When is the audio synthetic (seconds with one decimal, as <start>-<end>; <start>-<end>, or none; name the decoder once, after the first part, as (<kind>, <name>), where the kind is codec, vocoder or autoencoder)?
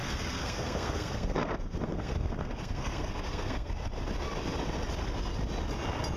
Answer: 0.0-3.7 (codec, SNAC)